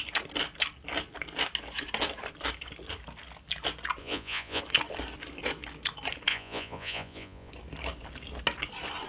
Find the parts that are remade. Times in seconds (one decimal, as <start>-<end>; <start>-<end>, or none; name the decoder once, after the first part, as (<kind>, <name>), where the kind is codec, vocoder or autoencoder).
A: 4.0-4.6 (vocoder, Vocos); 6.3-7.5